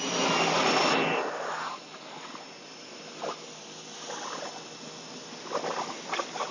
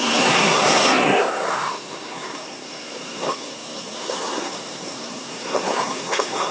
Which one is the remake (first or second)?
second